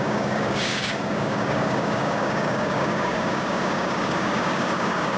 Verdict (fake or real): fake